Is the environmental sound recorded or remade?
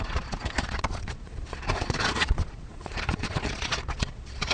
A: remade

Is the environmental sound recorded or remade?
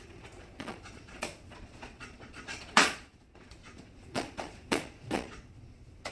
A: remade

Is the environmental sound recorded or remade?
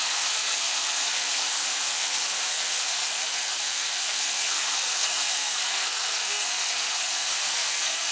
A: remade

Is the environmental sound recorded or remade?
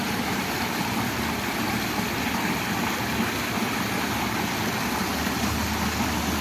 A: recorded